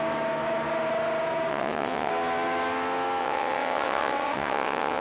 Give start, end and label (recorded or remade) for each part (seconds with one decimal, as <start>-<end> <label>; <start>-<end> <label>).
0.0-1.5 recorded; 1.5-2.1 remade; 2.1-3.2 recorded; 3.2-5.0 remade